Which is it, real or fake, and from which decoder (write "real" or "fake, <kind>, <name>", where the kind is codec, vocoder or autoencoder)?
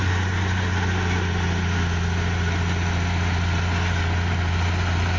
real